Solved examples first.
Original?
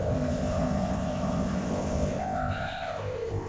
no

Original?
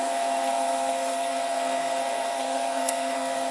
no